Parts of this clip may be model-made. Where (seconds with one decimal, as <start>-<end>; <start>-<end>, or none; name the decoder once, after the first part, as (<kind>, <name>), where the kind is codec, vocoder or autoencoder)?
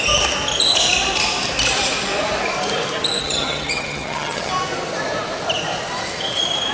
3.2-4.5 (vocoder, HiFi-GAN)